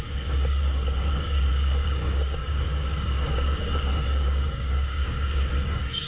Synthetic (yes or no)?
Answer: yes